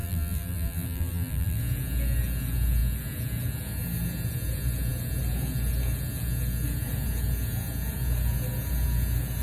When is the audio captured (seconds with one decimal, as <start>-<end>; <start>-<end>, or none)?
1.6-9.4